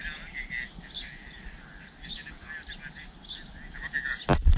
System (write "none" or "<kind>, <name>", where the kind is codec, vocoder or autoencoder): vocoder, BigVGAN v2